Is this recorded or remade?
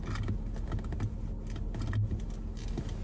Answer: recorded